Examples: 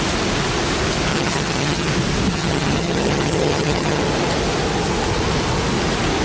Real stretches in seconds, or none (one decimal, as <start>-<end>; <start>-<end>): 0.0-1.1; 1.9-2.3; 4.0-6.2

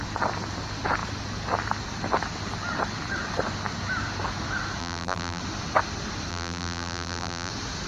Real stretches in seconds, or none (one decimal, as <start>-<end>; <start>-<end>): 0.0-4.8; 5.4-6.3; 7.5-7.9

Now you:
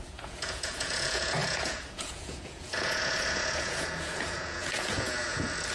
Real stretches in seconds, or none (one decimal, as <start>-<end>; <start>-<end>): none